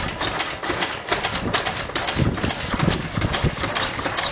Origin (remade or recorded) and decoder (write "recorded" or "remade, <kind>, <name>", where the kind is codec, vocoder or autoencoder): recorded